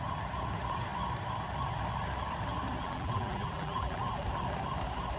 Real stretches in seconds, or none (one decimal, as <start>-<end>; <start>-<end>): 0.0-2.8; 4.0-5.2